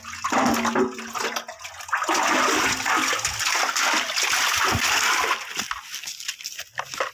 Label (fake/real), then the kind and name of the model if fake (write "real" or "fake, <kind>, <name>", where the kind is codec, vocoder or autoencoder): real